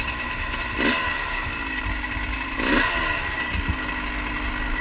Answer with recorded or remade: recorded